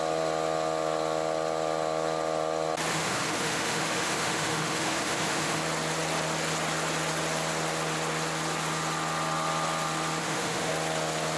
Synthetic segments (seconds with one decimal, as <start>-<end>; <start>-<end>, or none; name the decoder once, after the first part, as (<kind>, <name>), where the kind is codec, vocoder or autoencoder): 2.9-5.6 (autoencoder, DAC-VAE); 10.2-10.7